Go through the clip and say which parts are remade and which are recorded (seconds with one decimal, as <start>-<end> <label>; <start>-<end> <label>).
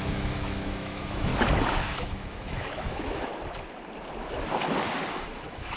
0.0-1.3 remade; 1.3-2.0 recorded; 2.0-3.3 remade; 3.3-5.1 recorded; 5.1-5.8 remade